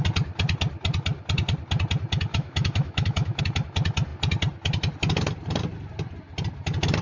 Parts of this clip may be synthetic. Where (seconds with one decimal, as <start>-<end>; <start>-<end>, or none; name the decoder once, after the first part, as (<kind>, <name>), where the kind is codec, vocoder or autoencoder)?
2.3-3.4 (autoencoder, DAC-VAE)